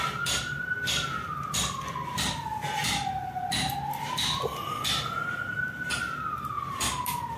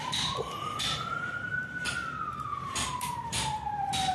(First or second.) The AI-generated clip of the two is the second